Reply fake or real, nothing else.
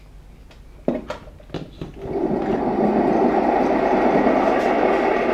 real